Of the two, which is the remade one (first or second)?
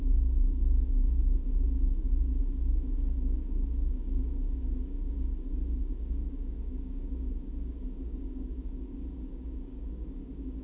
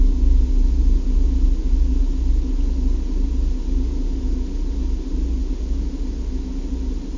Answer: first